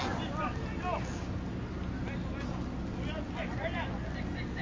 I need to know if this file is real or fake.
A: real